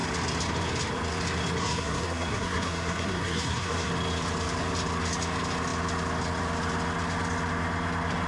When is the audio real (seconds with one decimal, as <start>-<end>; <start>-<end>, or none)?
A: 0.0-1.6; 3.9-8.3